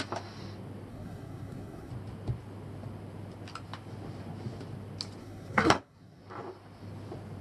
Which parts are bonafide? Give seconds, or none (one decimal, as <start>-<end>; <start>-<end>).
0.0-0.9; 1.9-5.2; 6.2-7.4